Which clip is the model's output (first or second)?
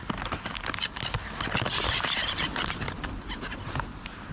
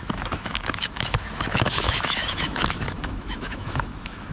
second